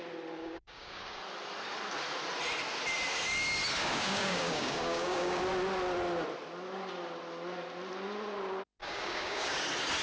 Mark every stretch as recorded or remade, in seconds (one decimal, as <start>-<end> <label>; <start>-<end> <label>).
0.0-0.4 recorded; 0.4-1.2 remade; 1.2-3.8 recorded; 3.8-5.4 remade; 5.4-8.8 recorded; 8.8-9.6 remade; 9.6-10.0 recorded